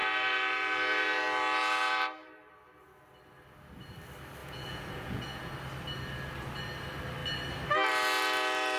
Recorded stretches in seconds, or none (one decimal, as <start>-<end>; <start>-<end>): 0.0-4.4; 5.5-8.8